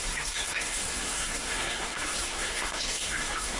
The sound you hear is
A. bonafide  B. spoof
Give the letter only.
B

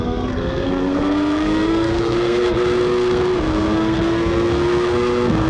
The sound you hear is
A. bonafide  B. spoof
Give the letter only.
B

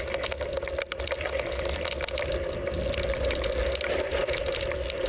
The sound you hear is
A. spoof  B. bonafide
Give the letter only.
B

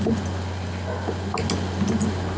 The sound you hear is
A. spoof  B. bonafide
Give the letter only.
B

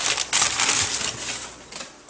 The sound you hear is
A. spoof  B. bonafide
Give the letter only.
B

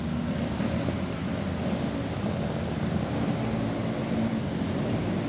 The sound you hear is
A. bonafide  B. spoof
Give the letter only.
A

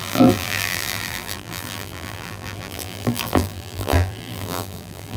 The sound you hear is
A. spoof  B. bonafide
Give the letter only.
A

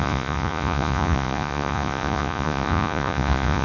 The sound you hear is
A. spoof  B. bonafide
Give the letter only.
A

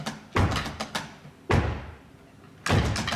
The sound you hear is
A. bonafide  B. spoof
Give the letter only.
A